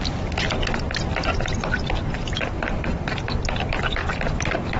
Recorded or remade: recorded